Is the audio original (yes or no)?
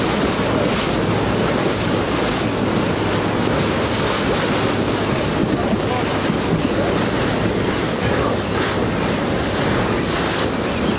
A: yes